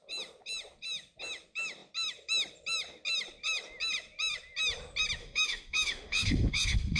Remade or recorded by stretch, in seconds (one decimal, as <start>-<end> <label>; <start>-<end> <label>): 0.0-5.2 recorded; 5.2-7.0 remade